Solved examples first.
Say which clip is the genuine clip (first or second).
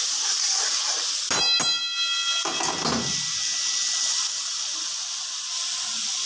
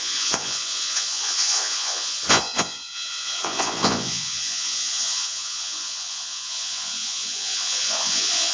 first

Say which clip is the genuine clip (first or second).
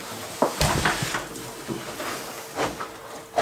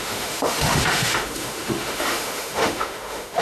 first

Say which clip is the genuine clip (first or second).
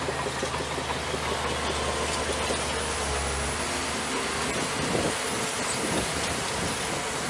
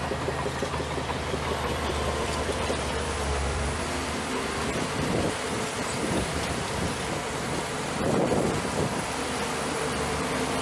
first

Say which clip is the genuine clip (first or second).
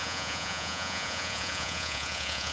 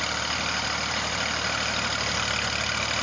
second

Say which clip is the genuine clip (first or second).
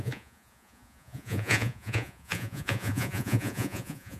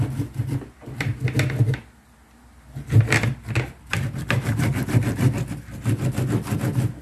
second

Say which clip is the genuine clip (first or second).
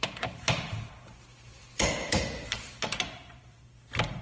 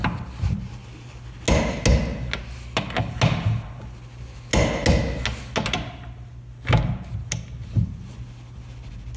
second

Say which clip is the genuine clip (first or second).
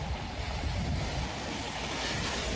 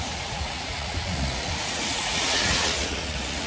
first